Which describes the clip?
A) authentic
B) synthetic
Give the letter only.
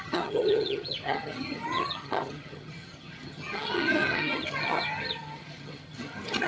B